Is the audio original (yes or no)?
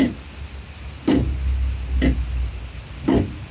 yes